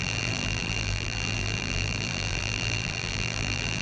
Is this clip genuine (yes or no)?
no